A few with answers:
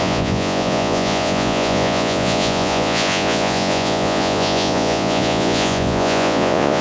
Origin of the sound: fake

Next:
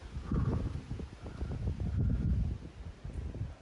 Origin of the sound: real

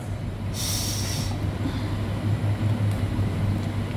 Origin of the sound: real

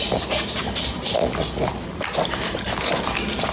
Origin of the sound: real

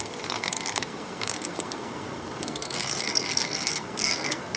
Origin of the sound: fake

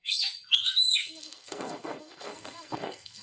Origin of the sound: fake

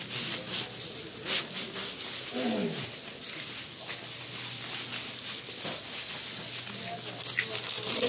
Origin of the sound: real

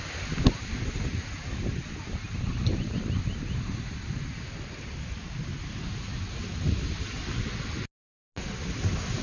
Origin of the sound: real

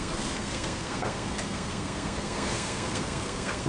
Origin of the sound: fake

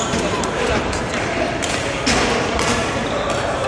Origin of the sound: real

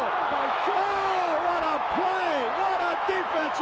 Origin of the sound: fake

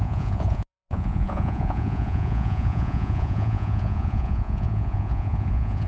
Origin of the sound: fake